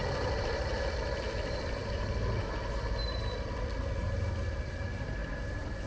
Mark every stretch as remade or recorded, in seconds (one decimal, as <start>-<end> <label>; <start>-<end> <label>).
0.0-5.9 recorded